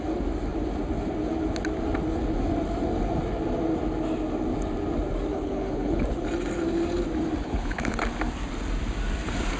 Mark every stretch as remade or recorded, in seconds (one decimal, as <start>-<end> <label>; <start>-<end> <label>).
0.0-5.3 recorded; 5.3-6.0 remade; 6.0-7.4 recorded; 7.4-8.0 remade; 8.0-9.6 recorded